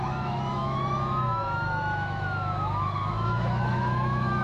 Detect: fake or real fake